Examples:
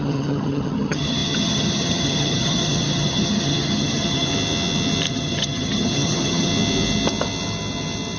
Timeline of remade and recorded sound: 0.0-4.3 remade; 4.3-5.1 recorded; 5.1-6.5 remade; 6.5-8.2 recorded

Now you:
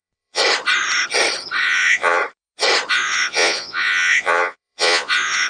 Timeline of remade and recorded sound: 0.0-0.4 remade; 0.4-1.6 recorded; 1.6-2.2 remade; 2.2-2.9 recorded; 2.9-5.5 remade

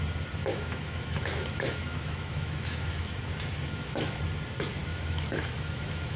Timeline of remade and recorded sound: 0.0-0.5 recorded; 0.5-4.2 remade; 4.2-4.8 recorded; 4.8-6.2 remade

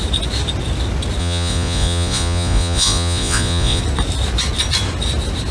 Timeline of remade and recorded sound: 0.0-1.2 recorded; 1.2-3.8 remade; 3.8-5.5 recorded

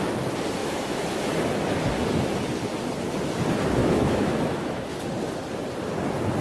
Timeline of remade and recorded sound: 0.0-0.6 recorded; 0.6-1.3 remade; 1.3-3.8 recorded; 3.8-5.0 remade; 5.0-6.4 recorded